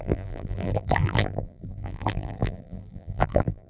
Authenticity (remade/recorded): remade